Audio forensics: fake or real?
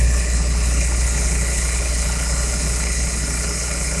fake